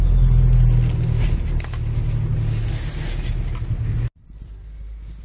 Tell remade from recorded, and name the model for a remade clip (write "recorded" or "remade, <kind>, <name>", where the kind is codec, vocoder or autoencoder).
recorded